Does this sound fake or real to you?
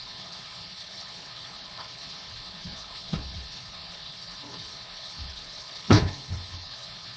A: fake